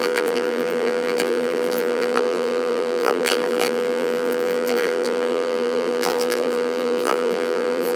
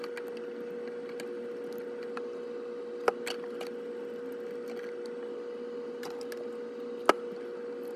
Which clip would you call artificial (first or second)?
first